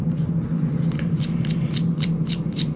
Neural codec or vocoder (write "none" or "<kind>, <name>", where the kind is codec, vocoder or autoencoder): none